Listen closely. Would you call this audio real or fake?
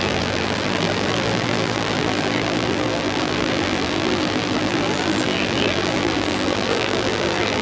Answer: fake